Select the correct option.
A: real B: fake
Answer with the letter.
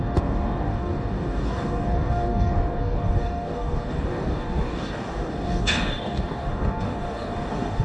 B